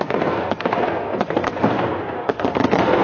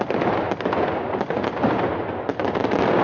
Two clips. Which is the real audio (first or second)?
second